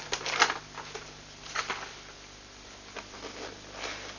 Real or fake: real